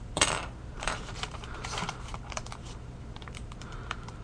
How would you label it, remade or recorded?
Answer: remade